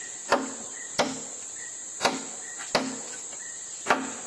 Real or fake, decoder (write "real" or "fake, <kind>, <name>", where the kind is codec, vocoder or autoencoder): real